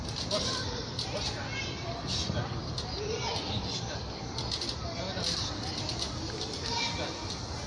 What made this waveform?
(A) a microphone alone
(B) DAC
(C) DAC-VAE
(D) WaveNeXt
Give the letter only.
A